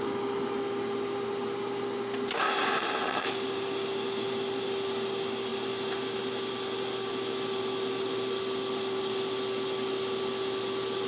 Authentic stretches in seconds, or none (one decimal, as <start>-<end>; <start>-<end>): 0.0-11.1